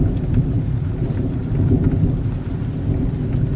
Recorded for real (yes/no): yes